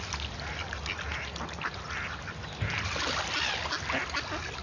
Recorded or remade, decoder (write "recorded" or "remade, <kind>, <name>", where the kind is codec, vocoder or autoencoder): recorded